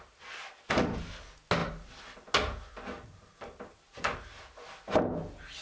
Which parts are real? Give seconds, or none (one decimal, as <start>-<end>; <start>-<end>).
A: 0.0-5.6